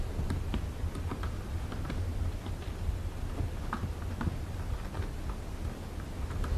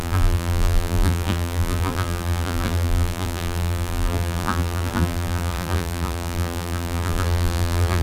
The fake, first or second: second